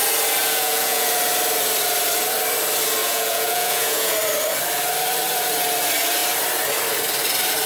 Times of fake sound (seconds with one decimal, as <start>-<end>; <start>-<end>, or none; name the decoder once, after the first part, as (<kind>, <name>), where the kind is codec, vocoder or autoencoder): 0.4-1.1 (vocoder, Vocos); 3.0-4.1

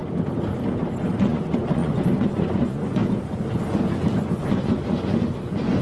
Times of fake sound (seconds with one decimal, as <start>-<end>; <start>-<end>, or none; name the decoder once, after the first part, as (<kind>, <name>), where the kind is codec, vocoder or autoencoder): 1.2-3.0 (vocoder, Vocos); 4.3-5.8